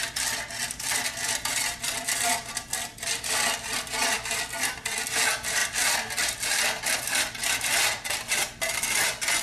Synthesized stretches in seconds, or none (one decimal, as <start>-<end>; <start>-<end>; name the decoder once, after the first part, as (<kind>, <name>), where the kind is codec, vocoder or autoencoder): 1.5-4.3 (vocoder, BigVGAN v2)